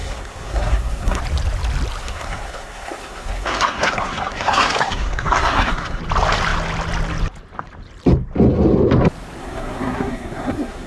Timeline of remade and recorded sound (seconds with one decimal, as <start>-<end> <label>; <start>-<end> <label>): 0.0-1.2 remade; 1.2-2.0 recorded; 2.0-6.0 remade; 6.0-9.4 recorded; 9.4-10.9 remade